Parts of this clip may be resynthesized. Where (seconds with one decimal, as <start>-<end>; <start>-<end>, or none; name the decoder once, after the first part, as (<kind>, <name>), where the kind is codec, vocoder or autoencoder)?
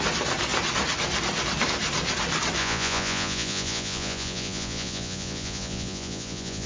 2.6-6.7 (vocoder, Vocos)